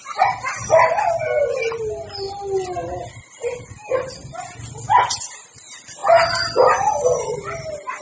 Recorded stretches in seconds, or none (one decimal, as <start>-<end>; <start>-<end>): 0.0-8.0